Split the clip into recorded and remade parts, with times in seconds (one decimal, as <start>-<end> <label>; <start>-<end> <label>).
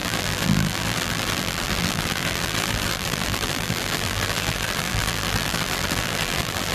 0.0-6.7 remade